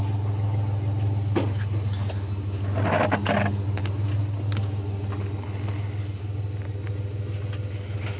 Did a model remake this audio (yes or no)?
no